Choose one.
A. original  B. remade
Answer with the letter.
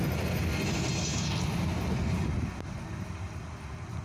A